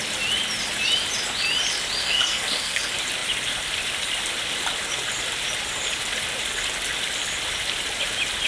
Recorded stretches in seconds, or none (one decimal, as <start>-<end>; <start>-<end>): 0.0-2.0; 2.8-8.5